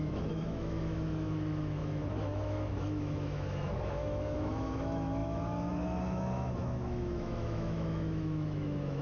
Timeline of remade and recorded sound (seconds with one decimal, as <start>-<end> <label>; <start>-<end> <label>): 0.0-9.0 remade